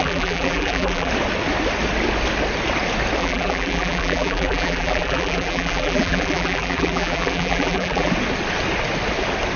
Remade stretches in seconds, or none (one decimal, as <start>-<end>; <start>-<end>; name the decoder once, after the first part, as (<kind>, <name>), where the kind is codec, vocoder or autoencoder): 0.0-1.1 (vocoder, BigVGAN v2); 3.2-8.1